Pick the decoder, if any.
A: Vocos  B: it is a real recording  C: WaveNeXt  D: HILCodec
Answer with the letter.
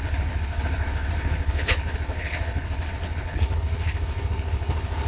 D